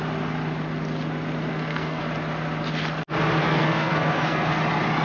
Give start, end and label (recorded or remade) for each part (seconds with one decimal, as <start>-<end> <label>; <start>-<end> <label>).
0.0-1.5 recorded; 1.5-2.0 remade; 2.0-3.4 recorded; 3.4-4.6 remade; 4.6-5.0 recorded